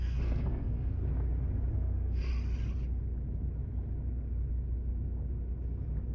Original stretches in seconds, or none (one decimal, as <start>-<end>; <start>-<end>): 1.0-1.7; 2.3-6.1